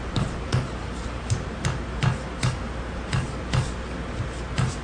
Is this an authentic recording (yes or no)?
yes